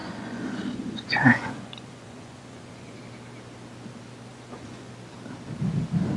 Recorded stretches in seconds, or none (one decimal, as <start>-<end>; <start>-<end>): 3.0-4.3; 4.9-6.2